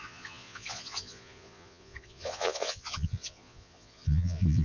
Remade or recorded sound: remade